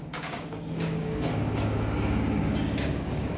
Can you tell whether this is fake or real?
fake